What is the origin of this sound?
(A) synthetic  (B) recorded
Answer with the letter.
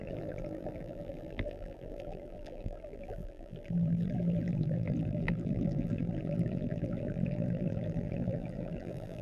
A